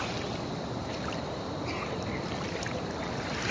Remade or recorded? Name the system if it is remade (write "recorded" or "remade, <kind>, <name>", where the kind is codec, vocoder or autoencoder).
recorded